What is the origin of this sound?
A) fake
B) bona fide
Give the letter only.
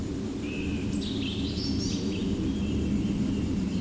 B